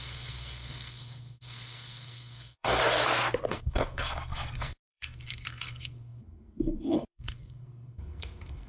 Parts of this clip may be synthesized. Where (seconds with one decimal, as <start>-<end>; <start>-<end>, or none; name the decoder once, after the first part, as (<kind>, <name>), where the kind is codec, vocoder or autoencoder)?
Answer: 0.0-2.8 (codec, SNAC); 3.5-8.7

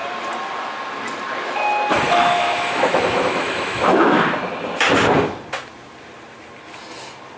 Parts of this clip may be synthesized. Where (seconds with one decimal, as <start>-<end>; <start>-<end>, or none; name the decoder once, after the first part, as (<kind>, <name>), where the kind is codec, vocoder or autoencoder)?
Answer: 2.1-4.2 (autoencoder, DAC-VAE)

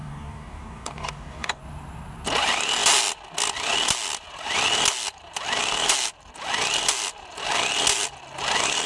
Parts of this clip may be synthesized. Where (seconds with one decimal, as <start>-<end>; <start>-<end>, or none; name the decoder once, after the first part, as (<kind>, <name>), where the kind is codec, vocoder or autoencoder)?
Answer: 0.0-1.6 (codec, DAC)